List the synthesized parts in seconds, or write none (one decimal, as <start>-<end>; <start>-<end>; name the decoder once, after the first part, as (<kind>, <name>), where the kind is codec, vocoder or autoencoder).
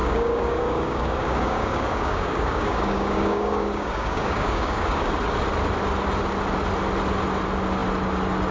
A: 0.0-5.1 (codec, DAC)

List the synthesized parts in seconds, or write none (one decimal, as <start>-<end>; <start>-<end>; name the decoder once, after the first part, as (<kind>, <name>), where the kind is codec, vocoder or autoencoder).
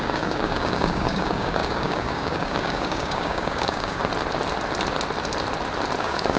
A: 0.0-4.0 (codec, DAC); 6.0-6.4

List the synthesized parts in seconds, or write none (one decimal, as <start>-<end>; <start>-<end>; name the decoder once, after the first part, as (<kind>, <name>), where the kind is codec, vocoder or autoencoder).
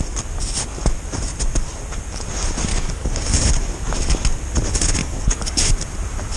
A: 2.7-3.3 (codec, DAC); 5.0-5.6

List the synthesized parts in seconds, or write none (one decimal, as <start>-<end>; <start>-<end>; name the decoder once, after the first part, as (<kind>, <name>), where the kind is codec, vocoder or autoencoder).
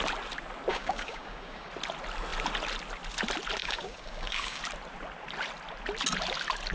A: 0.7-1.7 (codec, DAC); 3.6-4.6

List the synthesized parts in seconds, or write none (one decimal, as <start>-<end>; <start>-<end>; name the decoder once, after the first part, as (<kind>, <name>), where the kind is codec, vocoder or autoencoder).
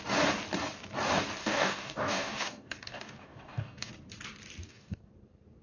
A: 1.4-3.9 (codec, DAC); 4.6-5.1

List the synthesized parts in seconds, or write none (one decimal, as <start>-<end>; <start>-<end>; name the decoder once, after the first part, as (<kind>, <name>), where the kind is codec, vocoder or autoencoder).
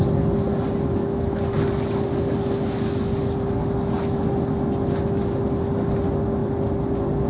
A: 1.0-3.7 (codec, DAC)